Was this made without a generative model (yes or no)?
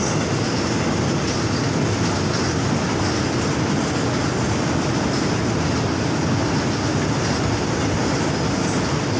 yes